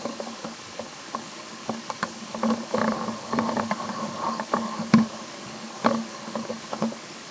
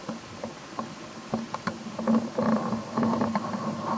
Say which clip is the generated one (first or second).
first